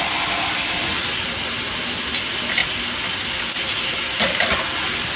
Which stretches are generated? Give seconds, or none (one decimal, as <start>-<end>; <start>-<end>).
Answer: none